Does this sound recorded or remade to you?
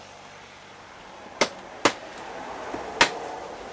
recorded